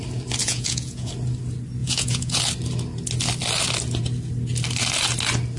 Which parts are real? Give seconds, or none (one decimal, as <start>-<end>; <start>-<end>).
0.0-0.4; 1.1-1.8; 2.4-5.6